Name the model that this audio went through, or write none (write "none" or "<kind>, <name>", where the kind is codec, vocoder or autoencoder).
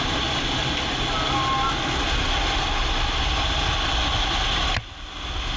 none